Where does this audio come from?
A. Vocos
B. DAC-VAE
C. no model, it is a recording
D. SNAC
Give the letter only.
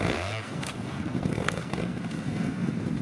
D